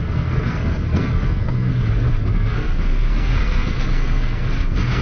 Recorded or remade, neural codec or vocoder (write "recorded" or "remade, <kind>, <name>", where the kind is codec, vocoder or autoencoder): remade, codec, SNAC